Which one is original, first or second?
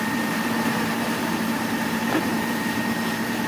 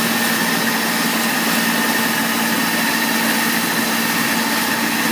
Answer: second